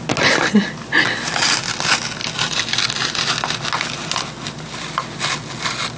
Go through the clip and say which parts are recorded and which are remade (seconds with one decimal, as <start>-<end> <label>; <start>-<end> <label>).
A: 0.0-6.0 recorded